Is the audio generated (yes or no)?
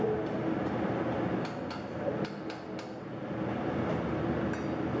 no